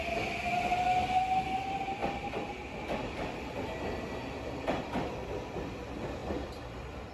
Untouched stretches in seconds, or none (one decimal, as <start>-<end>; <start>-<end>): 0.0-7.1